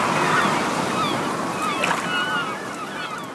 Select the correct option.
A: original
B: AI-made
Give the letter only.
A